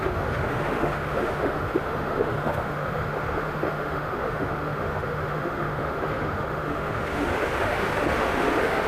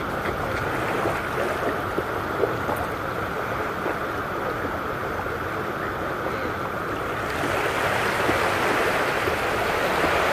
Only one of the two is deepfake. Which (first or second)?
first